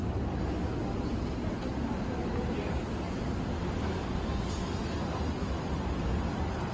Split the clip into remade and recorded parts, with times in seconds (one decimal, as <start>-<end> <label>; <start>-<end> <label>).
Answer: 0.0-6.7 recorded